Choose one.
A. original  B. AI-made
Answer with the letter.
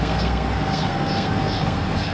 B